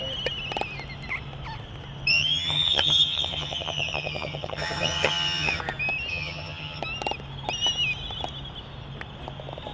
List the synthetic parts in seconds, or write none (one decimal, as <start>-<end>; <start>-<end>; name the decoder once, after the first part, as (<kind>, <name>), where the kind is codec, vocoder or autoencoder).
2.1-5.6 (vocoder, HiFi-GAN); 6.1-6.8